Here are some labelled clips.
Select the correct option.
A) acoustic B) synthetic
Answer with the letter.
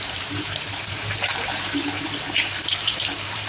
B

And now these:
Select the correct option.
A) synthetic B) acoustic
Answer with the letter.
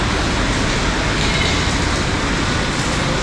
B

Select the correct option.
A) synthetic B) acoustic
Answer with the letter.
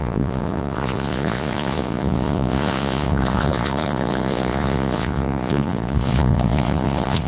A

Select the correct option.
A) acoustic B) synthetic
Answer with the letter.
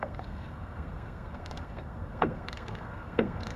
B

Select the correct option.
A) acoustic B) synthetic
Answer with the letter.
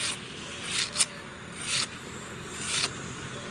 A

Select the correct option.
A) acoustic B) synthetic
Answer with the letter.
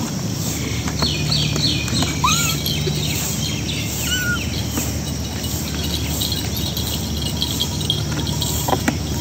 A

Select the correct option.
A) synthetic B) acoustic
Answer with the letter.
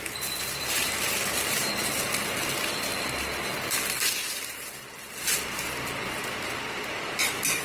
A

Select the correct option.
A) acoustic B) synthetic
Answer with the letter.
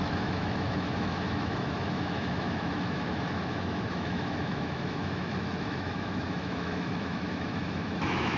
B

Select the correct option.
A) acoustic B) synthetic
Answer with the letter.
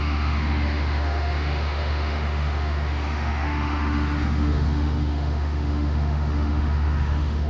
B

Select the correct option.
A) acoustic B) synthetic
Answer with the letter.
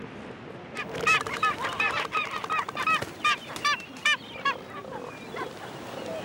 A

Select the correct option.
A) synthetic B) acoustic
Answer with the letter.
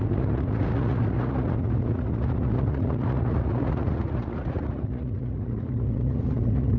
A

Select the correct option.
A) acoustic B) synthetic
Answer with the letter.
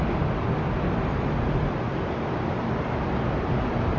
A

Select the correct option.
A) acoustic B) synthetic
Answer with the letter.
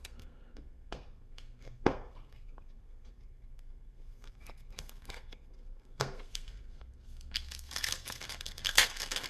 B